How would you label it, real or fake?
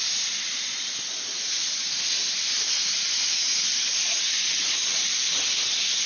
real